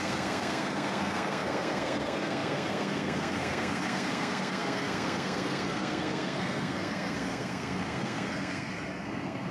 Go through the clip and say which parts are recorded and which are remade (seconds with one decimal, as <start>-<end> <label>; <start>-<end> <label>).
0.0-9.5 remade